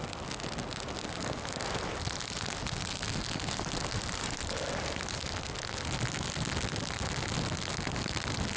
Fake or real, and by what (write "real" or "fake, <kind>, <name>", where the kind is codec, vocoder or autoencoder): real